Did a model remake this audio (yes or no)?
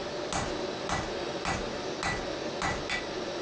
no